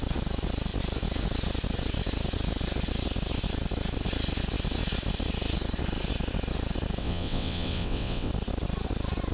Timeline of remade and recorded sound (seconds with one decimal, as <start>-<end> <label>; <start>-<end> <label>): 0.0-7.0 recorded; 7.0-8.3 remade; 8.3-9.3 recorded